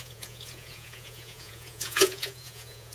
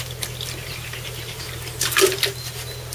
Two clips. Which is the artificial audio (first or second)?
first